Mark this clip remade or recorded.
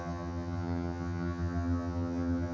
remade